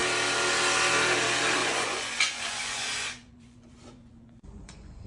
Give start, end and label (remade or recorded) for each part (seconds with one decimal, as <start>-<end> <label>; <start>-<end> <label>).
0.0-1.6 recorded; 1.6-5.1 remade